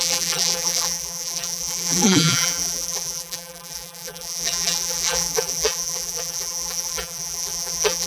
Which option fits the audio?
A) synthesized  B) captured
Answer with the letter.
A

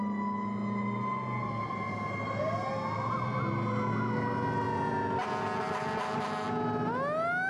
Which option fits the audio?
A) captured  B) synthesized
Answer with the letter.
A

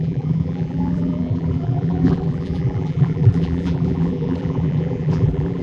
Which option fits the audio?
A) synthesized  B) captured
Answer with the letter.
A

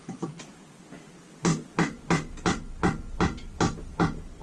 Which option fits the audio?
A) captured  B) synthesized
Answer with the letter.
A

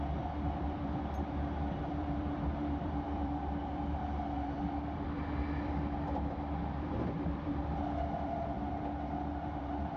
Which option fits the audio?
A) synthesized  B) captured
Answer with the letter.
A